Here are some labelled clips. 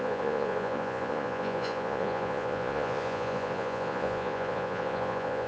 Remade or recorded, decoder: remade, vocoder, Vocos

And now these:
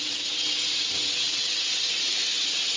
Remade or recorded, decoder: remade, vocoder, WaveNeXt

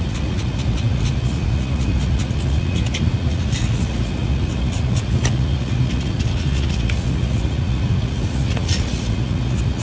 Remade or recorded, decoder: remade, vocoder, Vocos